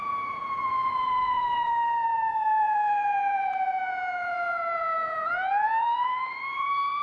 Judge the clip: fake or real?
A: fake